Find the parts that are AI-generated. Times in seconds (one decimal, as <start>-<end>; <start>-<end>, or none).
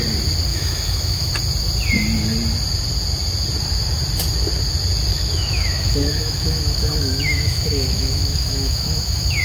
0.5-1.3; 5.1-9.4